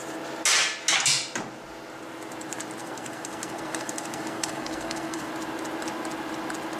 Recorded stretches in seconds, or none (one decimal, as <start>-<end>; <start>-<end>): 0.0-2.8; 5.3-6.8